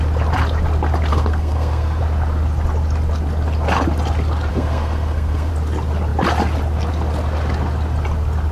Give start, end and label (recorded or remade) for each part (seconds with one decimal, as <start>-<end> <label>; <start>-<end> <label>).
0.0-1.1 recorded; 1.1-2.0 remade; 2.0-4.5 recorded; 4.5-5.5 remade; 5.5-8.5 recorded